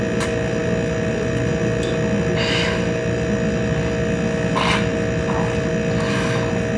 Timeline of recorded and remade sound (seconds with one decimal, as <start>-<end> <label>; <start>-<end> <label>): 0.0-6.8 recorded